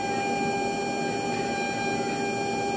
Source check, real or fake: real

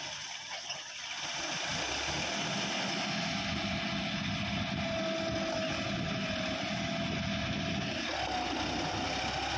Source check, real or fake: real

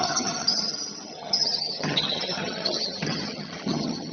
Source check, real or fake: fake